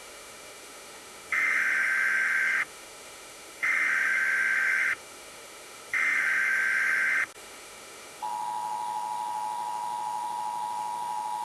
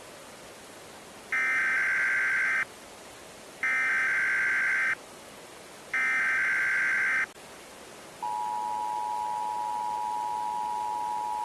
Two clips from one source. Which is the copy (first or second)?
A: first